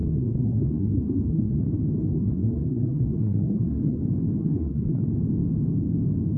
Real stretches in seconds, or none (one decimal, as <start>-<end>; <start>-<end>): 1.6-2.1; 4.0-4.4; 5.0-6.4